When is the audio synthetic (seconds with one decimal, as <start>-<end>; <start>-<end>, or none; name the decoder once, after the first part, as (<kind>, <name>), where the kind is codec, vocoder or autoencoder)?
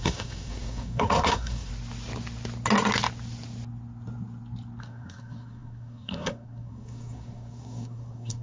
0.0-1.7 (codec, SNAC); 4.8-8.4